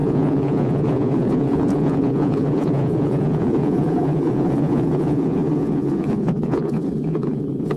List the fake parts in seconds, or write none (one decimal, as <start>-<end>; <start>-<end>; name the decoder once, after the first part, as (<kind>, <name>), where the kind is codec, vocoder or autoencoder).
0.0-7.8 (vocoder, Vocos)